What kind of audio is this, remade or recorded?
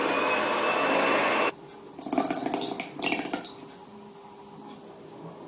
recorded